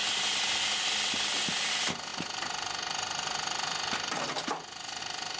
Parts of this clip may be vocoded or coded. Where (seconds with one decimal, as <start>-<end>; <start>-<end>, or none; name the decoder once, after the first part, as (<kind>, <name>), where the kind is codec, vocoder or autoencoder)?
1.7-5.4 (vocoder, BigVGAN v2)